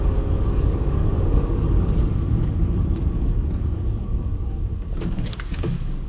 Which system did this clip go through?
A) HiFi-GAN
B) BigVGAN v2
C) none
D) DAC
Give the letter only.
D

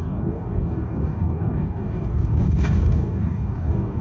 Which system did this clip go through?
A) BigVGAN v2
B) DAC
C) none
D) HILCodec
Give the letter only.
B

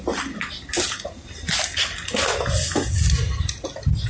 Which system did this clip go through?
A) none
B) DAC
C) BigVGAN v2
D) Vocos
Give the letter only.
A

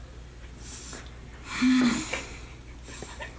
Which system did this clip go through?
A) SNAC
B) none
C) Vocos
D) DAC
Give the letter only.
B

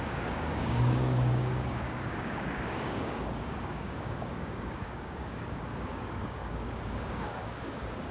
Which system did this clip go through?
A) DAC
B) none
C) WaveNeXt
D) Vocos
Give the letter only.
A